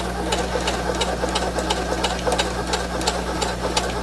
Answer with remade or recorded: recorded